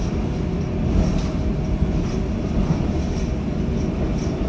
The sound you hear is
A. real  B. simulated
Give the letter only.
A